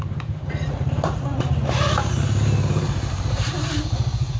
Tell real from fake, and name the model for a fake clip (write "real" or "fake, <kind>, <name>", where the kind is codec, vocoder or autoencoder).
fake, vocoder, BigVGAN v2